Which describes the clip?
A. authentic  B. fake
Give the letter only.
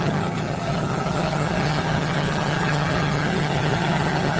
B